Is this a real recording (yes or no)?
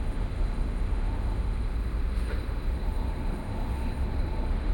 no